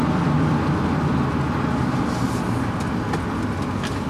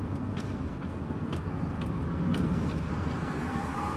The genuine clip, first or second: first